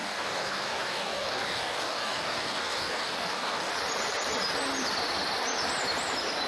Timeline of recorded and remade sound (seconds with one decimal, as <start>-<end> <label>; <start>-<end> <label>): 0.0-3.7 remade; 3.7-6.5 recorded

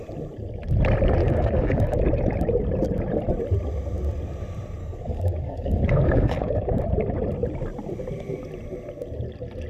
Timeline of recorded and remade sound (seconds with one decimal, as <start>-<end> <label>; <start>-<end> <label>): 0.0-1.2 recorded; 1.2-2.0 remade; 2.0-4.8 recorded; 4.8-6.8 remade; 6.8-9.7 recorded

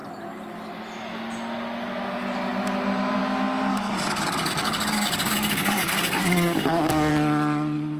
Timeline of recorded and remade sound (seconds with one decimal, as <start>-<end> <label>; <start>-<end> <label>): 0.0-3.7 recorded; 3.7-7.1 remade; 7.1-8.0 recorded

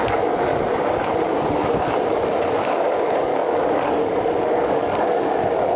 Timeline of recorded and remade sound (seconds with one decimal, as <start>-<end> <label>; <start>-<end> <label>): 0.0-0.5 remade; 0.5-2.4 recorded; 2.4-5.8 remade

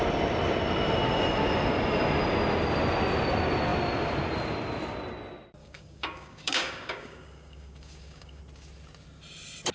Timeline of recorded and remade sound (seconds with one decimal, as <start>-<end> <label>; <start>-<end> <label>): 0.0-5.6 recorded; 5.6-8.4 remade; 8.4-9.7 recorded

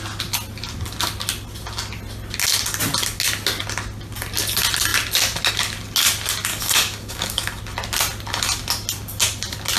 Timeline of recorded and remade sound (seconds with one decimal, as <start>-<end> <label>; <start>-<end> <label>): 0.0-6.5 recorded; 6.5-7.6 remade; 7.6-9.8 recorded

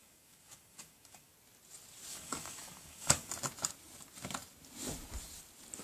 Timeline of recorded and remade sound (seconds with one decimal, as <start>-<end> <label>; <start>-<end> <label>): 0.0-1.3 remade; 1.3-2.1 recorded; 2.1-3.3 remade; 3.3-5.8 recorded

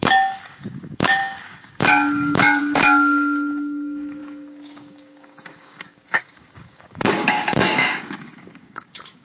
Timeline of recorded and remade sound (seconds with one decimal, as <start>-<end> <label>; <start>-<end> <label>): 0.0-9.2 remade